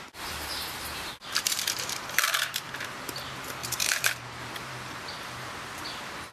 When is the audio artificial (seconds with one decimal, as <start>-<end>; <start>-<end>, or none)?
0.0-6.3